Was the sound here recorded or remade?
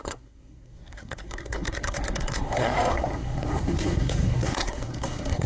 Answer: remade